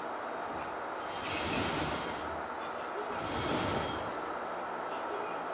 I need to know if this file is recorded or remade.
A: recorded